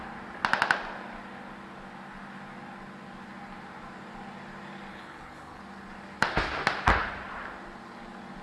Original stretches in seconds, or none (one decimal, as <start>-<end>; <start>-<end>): 0.0-4.9; 5.6-8.4